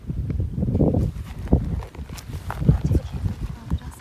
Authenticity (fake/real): real